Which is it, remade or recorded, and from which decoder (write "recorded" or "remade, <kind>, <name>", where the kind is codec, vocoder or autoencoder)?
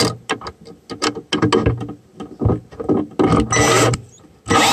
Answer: recorded